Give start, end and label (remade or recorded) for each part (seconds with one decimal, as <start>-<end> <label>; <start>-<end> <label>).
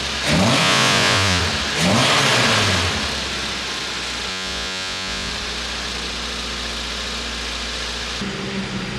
0.0-0.6 recorded; 0.6-1.4 remade; 1.4-4.3 recorded; 4.3-5.3 remade; 5.3-9.0 recorded